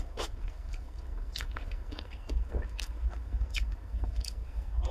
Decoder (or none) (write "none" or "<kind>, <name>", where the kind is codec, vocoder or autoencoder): codec, SNAC